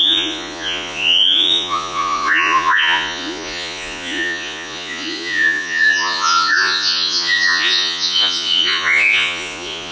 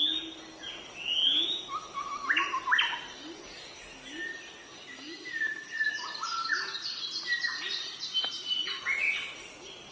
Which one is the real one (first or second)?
second